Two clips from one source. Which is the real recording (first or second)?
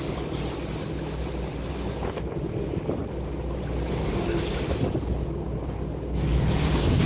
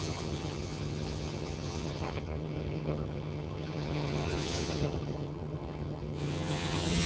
first